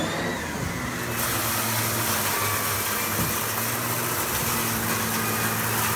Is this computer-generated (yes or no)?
no